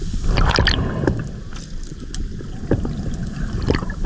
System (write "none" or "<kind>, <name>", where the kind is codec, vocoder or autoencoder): none